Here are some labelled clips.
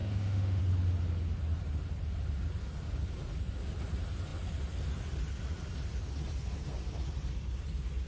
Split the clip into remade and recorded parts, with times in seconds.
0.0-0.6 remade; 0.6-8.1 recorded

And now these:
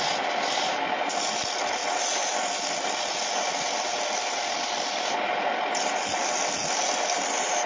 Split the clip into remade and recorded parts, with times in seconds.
0.0-7.7 recorded

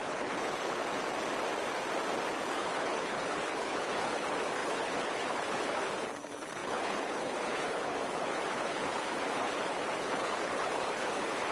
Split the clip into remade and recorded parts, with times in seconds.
0.0-0.8 remade; 0.8-2.4 recorded; 2.4-11.5 remade

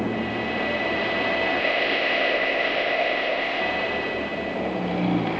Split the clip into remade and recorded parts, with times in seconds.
0.0-1.6 recorded; 1.6-3.6 remade; 3.6-5.4 recorded

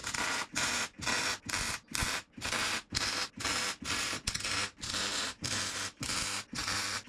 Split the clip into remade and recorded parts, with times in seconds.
0.0-0.7 remade; 0.7-5.1 recorded; 5.1-5.6 remade; 5.6-7.1 recorded

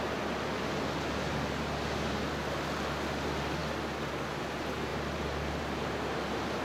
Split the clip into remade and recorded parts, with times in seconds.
0.0-4.9 recorded; 4.9-6.6 remade

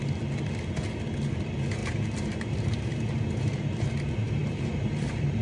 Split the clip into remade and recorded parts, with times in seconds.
0.0-1.8 recorded; 1.8-3.6 remade; 3.6-4.4 recorded; 4.4-5.4 remade

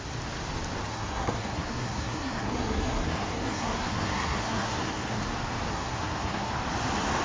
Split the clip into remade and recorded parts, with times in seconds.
0.0-0.9 recorded; 0.9-5.2 remade; 5.2-5.7 recorded; 5.7-6.5 remade; 6.5-7.2 recorded